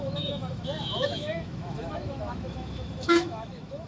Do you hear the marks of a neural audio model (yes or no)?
yes